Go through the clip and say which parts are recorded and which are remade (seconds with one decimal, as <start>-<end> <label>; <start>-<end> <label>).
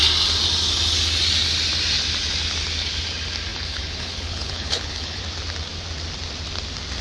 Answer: 0.0-3.5 recorded; 3.5-5.2 remade; 5.2-7.0 recorded